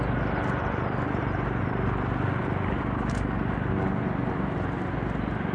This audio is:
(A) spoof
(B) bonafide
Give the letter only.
B